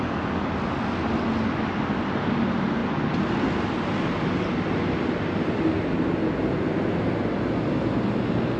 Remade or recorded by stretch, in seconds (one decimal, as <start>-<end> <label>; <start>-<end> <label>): 0.0-8.6 recorded